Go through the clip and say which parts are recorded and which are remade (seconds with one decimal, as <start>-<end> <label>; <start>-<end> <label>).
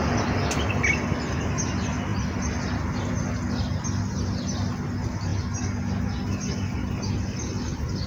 0.0-8.1 recorded